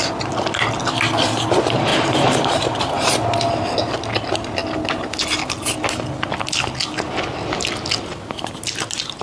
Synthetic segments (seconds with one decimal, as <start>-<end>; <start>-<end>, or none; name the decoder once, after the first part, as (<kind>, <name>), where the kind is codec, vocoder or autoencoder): 1.9-3.1 (vocoder, BigVGAN v2)